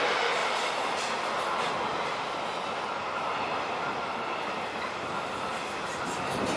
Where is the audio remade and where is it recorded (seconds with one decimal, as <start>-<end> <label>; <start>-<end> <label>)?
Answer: 0.0-6.6 recorded